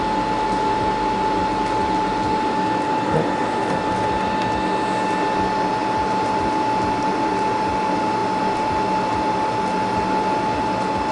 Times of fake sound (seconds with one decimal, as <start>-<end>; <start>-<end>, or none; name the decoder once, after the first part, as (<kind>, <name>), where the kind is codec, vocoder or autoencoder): none